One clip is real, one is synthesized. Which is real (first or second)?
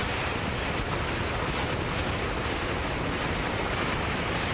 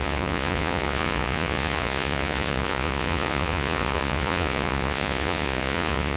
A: first